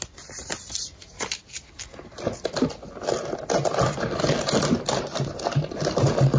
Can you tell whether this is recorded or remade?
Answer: recorded